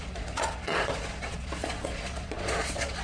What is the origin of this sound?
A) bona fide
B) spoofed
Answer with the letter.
B